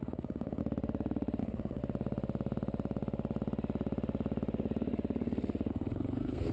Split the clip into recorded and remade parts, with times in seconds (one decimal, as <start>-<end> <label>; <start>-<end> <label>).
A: 0.0-0.6 remade; 0.6-1.4 recorded; 1.4-1.8 remade; 1.8-5.7 recorded; 5.7-6.5 remade